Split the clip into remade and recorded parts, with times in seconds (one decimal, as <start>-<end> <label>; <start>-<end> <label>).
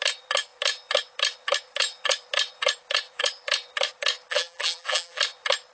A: 0.0-4.3 recorded; 4.3-5.2 remade; 5.2-5.7 recorded